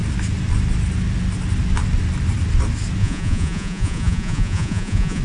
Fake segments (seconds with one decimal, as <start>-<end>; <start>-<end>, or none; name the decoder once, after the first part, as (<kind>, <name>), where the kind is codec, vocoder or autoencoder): 3.0-5.2 (vocoder, Vocos)